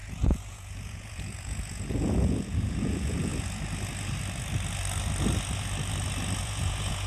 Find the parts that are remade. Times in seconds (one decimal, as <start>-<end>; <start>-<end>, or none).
0.0-3.3; 6.4-7.1